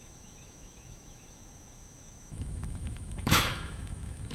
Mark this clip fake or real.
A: fake